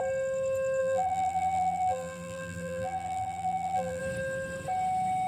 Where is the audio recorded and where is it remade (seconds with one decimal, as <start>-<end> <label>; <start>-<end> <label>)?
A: 0.0-0.8 recorded; 0.8-4.0 remade; 4.0-5.3 recorded